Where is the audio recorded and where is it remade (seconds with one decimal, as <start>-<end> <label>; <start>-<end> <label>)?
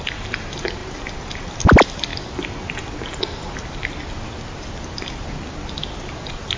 0.0-6.6 recorded